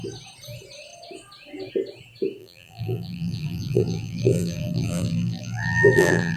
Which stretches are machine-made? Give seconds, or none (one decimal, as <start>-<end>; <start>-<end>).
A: 2.4-6.4